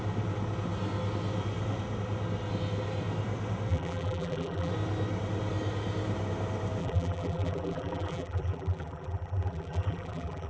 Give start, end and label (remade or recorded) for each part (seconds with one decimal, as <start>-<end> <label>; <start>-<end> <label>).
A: 0.0-3.7 recorded; 3.7-4.7 remade; 4.7-6.8 recorded; 6.8-10.5 remade